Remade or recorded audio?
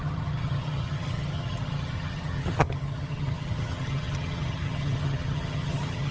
remade